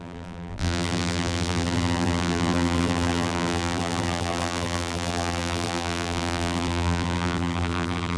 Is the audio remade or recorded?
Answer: remade